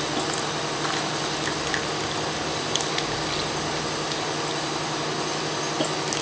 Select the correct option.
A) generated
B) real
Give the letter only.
B